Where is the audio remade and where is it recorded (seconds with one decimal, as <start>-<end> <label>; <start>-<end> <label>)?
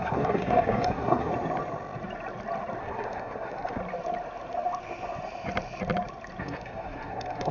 0.0-1.3 remade; 1.3-2.8 recorded; 2.8-3.8 remade; 3.8-6.4 recorded; 6.4-7.5 remade